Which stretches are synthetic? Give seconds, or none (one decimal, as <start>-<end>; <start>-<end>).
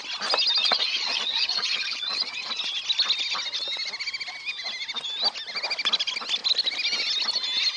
0.6-2.5